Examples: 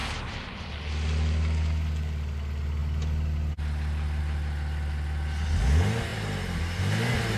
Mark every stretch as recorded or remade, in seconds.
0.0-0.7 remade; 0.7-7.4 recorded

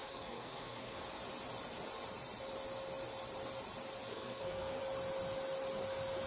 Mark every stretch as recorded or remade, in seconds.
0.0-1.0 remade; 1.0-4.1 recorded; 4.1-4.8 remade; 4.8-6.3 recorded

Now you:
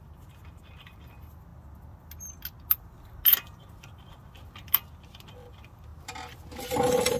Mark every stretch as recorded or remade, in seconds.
0.0-7.2 recorded

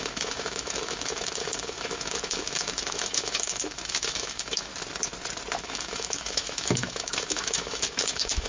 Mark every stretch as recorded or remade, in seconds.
0.0-4.7 remade; 4.7-5.6 recorded; 5.6-8.5 remade